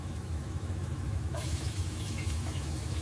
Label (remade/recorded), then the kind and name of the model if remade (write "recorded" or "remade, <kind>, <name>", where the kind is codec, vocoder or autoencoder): remade, autoencoder, DAC-VAE